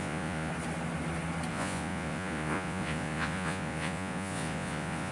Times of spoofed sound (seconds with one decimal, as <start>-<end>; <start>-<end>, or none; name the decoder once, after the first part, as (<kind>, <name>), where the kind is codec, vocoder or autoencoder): 0.0-0.5 (vocoder, Vocos); 1.5-5.1